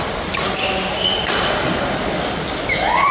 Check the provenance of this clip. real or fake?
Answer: real